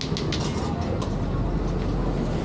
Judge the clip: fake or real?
real